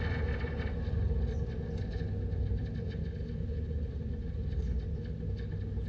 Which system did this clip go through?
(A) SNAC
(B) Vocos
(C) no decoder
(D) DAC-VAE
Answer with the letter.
C